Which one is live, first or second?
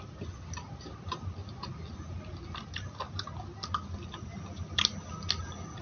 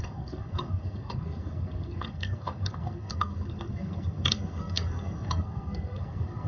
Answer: first